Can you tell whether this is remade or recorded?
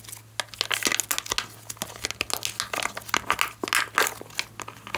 recorded